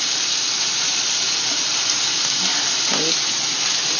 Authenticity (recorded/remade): recorded